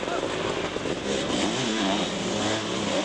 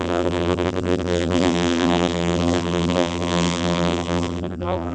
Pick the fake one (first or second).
second